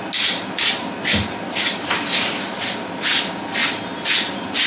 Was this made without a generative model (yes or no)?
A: yes